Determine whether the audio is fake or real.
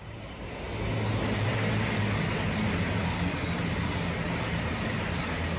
real